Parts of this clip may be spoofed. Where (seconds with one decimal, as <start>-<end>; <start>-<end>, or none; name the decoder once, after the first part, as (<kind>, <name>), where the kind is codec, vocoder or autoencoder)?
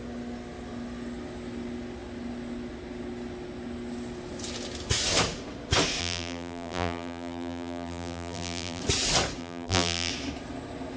6.0-8.8 (vocoder, BigVGAN v2); 9.4-10.1